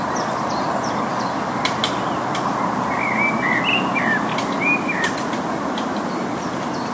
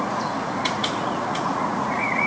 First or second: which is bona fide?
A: first